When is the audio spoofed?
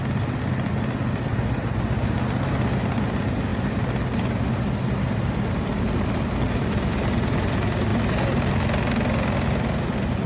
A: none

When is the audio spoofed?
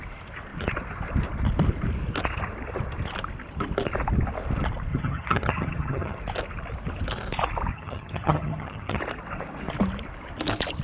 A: 4.9-6.2; 7.7-9.0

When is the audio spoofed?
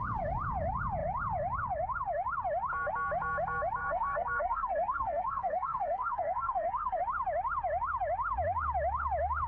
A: 3.8-7.0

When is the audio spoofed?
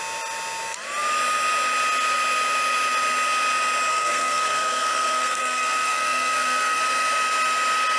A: 3.9-6.8